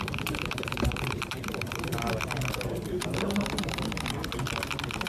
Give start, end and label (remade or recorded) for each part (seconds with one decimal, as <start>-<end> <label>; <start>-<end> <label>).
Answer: 0.0-1.9 remade; 1.9-5.1 recorded